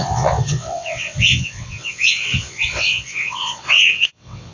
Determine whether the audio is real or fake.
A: fake